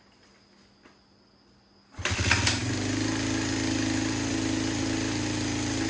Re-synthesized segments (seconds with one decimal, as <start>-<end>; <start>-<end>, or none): none